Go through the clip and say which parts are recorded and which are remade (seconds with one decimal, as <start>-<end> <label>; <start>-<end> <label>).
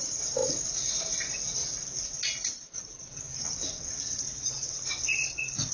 0.0-4.2 recorded; 4.2-5.7 remade